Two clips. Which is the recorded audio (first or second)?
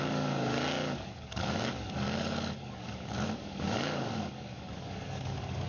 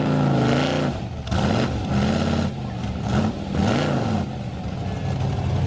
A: second